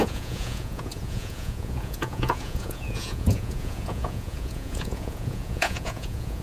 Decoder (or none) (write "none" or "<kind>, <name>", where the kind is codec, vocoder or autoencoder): vocoder, Vocos